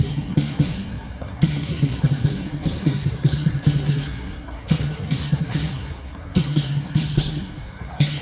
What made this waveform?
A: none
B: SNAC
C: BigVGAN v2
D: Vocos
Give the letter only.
B